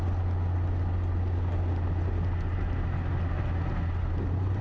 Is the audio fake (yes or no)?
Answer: no